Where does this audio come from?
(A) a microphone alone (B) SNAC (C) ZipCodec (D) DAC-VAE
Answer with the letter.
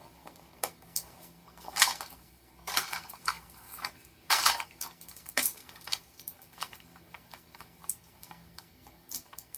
B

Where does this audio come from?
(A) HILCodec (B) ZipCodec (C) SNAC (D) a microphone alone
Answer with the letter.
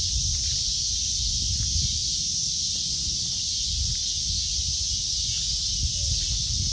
D